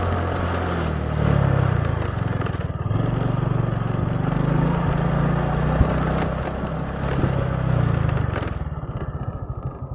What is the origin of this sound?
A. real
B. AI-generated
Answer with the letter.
A